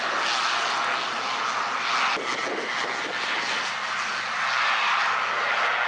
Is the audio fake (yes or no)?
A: no